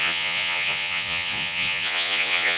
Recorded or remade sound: remade